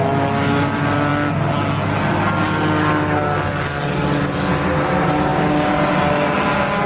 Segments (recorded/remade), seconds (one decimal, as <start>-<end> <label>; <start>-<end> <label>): 0.0-6.9 recorded